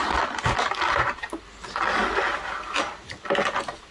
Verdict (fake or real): real